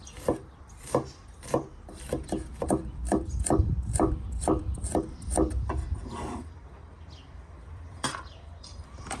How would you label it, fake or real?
fake